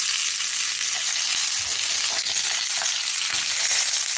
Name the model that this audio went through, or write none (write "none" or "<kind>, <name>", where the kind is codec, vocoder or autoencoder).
none